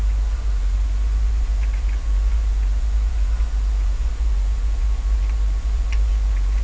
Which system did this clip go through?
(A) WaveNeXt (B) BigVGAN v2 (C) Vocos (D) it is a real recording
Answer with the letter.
C